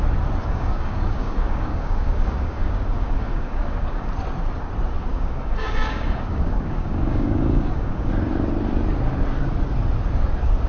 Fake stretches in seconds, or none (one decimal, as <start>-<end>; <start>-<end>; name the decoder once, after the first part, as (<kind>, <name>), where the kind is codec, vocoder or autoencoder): 0.4-4.1 (codec, DAC); 5.1-8.1